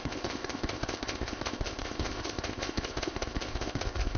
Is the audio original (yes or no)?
no